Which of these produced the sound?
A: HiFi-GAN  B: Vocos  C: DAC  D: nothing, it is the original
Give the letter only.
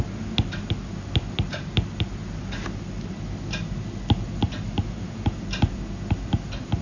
D